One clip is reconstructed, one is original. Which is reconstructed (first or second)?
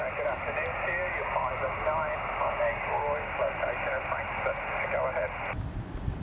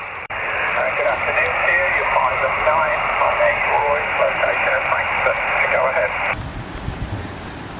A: second